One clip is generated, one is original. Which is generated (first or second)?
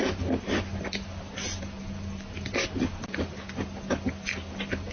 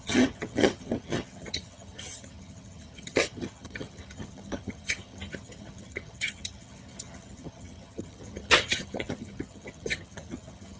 second